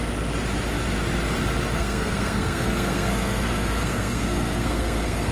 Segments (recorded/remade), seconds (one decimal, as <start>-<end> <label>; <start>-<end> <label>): 0.0-1.7 recorded; 1.7-5.3 remade